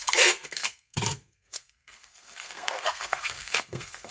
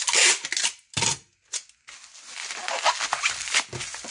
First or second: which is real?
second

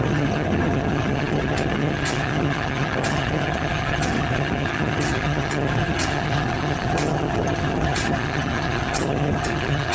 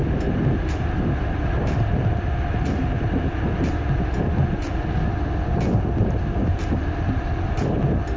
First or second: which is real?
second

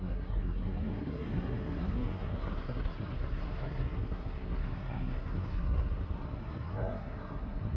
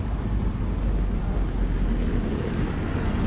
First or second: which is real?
second